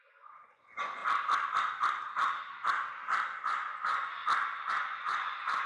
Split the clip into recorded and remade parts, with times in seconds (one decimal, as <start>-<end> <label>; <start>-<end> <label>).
0.0-1.0 remade; 1.0-3.4 recorded; 3.4-4.2 remade; 4.2-4.7 recorded; 4.7-5.7 remade